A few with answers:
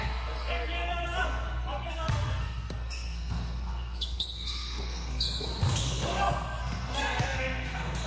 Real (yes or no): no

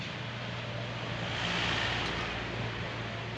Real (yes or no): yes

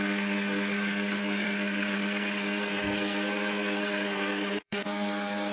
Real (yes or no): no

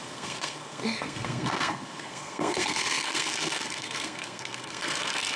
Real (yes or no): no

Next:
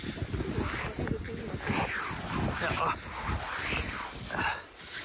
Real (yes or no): yes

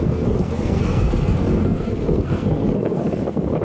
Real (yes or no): no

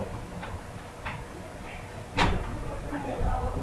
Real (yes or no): yes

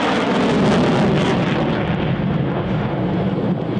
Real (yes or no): yes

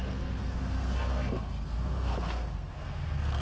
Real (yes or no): no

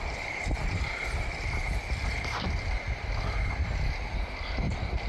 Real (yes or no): yes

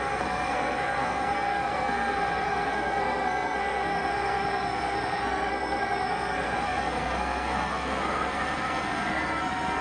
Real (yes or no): no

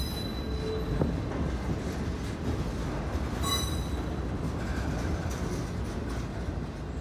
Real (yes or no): yes